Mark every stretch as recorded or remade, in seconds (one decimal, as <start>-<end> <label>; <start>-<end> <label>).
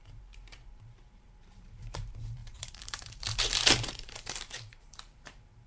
0.0-5.7 remade